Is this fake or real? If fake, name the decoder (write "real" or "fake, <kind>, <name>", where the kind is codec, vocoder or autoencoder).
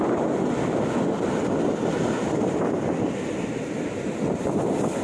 real